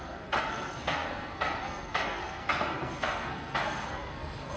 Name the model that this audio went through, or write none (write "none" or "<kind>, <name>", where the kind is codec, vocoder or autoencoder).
codec, SNAC